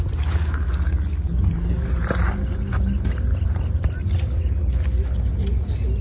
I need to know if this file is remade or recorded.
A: recorded